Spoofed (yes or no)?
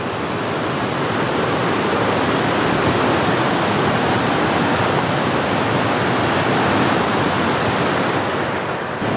no